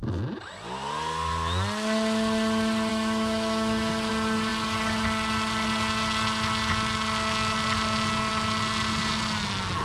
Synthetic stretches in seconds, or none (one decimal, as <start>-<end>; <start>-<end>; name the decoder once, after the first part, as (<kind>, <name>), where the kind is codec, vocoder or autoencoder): 2.9-4.1 (autoencoder, DAC-VAE)